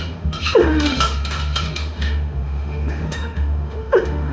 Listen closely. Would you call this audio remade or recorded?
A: remade